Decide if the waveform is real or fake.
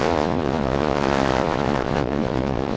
fake